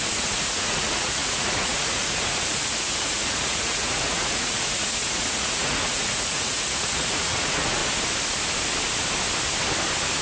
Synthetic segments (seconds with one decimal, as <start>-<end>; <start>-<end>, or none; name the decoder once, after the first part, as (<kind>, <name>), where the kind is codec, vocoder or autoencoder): 0.0-7.8 (vocoder, Vocos)